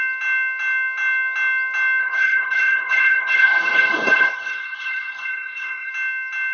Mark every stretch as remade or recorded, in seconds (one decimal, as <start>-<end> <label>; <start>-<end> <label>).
0.0-2.0 recorded; 2.0-5.9 remade; 5.9-6.5 recorded